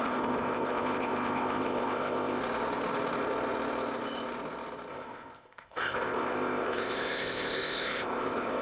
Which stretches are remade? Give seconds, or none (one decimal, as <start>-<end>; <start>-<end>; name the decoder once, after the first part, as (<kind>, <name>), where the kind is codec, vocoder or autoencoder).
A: 0.0-2.4 (codec, ZipCodec); 4.9-8.6